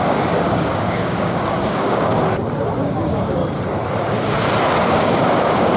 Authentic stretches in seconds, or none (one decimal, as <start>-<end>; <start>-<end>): 2.1-2.8; 3.4-4.9

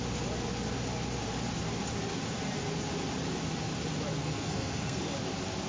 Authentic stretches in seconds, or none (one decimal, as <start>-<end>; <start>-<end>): 0.0-4.2; 5.0-5.7

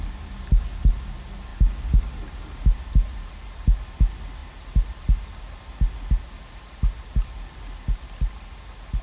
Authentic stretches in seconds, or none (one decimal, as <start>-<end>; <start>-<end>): 0.0-9.0

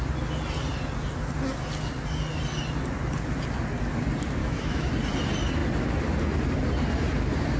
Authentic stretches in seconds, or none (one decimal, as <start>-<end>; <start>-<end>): 0.0-4.4; 4.9-7.6

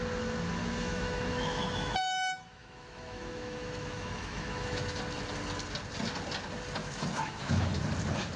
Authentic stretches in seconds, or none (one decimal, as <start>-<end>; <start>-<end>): 0.0-0.6; 5.0-6.8; 7.8-8.4

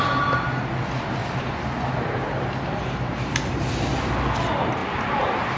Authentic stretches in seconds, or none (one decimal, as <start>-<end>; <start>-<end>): 0.0-1.2; 3.7-4.8

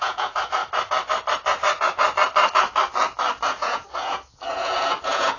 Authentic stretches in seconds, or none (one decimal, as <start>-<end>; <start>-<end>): 0.6-3.5